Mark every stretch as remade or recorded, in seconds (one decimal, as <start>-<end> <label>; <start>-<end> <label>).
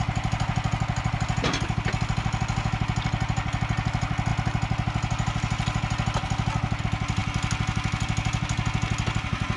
0.0-9.6 recorded